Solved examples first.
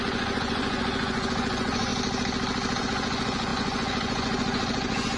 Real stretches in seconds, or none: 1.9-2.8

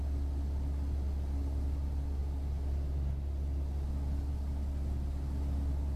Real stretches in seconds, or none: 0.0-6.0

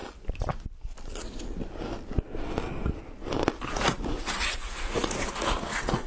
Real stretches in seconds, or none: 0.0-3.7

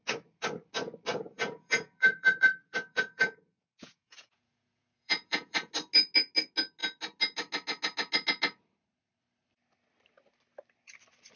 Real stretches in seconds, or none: 0.0-1.1; 5.7-11.4